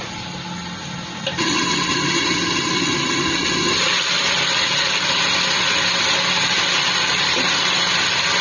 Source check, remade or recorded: recorded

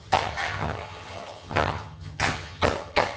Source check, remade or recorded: remade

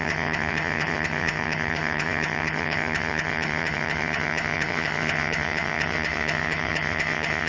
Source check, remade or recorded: remade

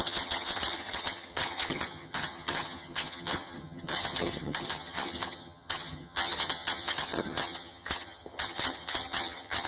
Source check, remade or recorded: remade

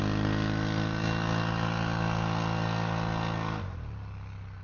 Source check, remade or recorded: recorded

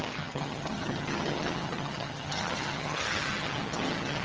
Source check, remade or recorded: remade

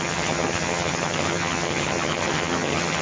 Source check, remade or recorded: remade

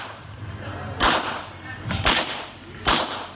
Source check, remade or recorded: recorded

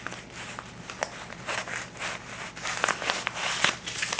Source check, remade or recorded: recorded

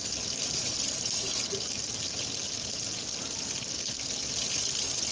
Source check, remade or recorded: recorded